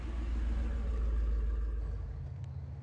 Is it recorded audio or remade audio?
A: recorded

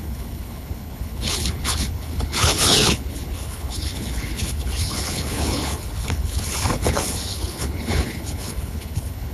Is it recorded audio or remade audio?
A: remade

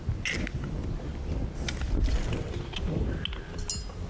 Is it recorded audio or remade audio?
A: recorded